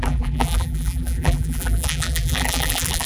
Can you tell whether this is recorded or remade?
remade